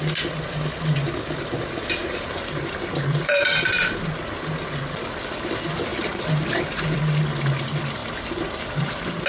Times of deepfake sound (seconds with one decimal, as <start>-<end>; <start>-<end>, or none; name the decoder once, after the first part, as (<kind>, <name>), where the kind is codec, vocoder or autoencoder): 2.0-4.6 (vocoder, BigVGAN v2); 5.9-7.0

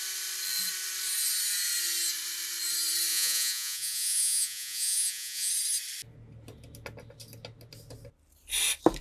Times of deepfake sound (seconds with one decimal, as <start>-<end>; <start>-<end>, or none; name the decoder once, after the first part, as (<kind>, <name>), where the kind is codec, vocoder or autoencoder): 3.1-5.5 (vocoder, Vocos)

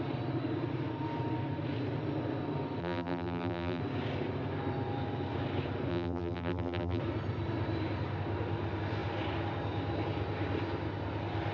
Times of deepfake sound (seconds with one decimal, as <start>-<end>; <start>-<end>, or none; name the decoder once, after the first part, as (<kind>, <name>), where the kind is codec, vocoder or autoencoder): 2.8-3.8 (vocoder, BigVGAN v2); 5.9-7.0

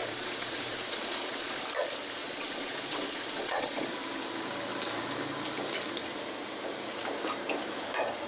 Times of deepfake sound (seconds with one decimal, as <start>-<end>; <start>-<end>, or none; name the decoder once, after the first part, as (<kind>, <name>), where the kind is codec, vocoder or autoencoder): 0.0-1.6 (vocoder, Vocos); 2.2-3.9

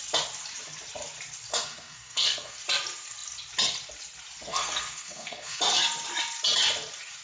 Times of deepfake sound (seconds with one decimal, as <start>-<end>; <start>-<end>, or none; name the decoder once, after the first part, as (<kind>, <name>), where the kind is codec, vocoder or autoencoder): 1.5-2.6 (codec, SNAC); 4.5-5.6

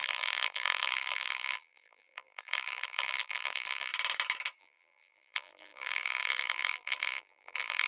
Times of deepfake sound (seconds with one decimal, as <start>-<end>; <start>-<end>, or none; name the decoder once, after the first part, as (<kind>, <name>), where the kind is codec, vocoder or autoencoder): 0.0-3.9 (vocoder, BigVGAN v2); 4.6-7.9

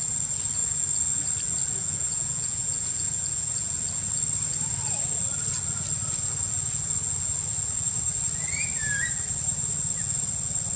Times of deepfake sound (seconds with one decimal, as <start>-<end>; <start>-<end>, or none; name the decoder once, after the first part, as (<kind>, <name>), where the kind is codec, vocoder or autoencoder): 1.8-3.7 (vocoder, Vocos)